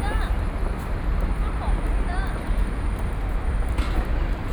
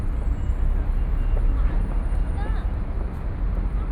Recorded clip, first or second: second